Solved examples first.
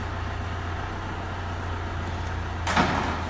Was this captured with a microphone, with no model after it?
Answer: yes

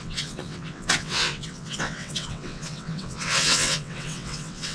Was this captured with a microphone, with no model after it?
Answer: no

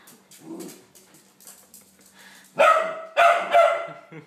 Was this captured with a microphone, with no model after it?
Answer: yes